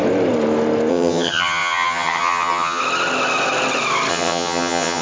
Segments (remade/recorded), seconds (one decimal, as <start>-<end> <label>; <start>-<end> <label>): 0.0-0.9 recorded; 0.9-2.8 remade; 2.8-4.1 recorded; 4.1-5.0 remade